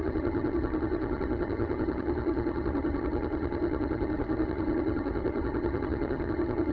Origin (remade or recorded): remade